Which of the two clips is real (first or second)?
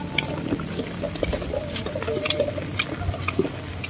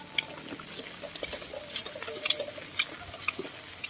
second